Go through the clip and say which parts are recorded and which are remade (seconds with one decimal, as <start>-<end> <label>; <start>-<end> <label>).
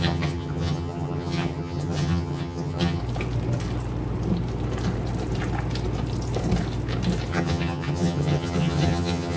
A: 0.0-3.0 remade; 3.0-7.3 recorded; 7.3-9.4 remade